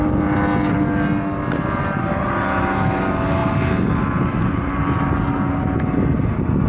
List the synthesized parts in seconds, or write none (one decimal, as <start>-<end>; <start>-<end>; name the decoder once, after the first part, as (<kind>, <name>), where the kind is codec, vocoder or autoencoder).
none